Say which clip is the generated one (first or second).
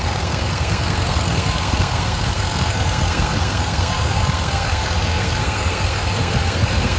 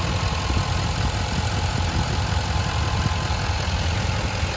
first